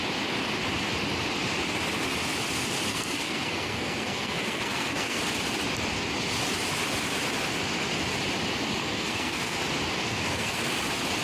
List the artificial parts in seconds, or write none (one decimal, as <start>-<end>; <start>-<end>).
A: 2.9-5.2; 8.8-9.6; 10.0-10.6